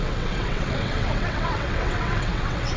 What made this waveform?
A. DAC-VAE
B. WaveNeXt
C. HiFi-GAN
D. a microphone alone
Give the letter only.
B